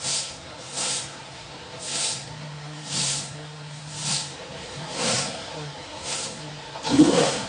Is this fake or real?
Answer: fake